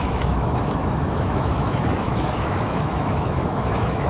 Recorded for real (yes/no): no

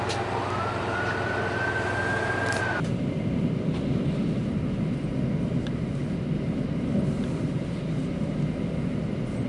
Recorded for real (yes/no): yes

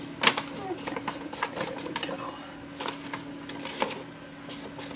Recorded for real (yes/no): yes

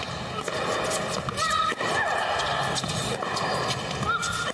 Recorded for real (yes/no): yes